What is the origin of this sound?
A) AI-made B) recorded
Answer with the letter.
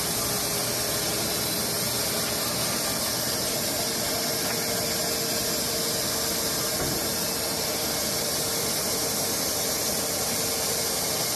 B